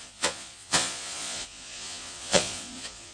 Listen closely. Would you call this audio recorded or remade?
remade